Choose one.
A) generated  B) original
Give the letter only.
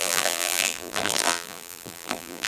A